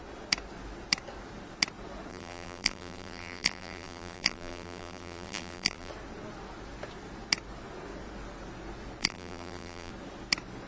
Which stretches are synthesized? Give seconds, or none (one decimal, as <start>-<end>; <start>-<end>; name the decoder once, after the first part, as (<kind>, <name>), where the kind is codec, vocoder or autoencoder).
2.1-5.9 (vocoder, BigVGAN v2); 9.0-9.9